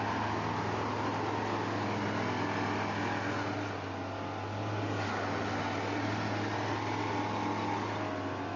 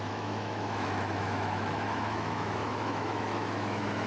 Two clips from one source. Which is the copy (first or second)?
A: second